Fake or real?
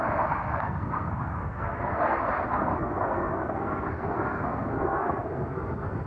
fake